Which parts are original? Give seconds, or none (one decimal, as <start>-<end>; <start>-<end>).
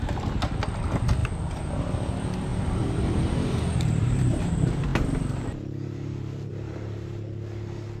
0.0-2.5; 4.5-8.0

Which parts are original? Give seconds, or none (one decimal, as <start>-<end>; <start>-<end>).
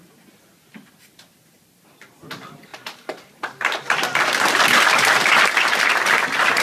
0.0-6.6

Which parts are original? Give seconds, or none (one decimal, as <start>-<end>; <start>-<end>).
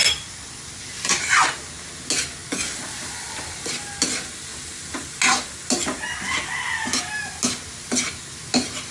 1.2-8.9